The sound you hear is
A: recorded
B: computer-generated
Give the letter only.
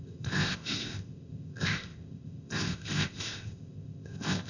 B